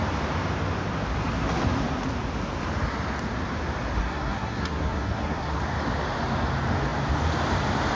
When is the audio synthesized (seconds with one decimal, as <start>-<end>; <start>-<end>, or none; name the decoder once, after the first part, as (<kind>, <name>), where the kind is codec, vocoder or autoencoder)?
4.0-5.6 (codec, SNAC)